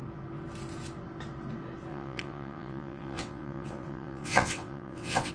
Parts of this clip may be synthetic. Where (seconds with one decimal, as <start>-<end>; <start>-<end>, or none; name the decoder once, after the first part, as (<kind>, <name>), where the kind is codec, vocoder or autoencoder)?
1.9-5.3 (vocoder, WaveNeXt)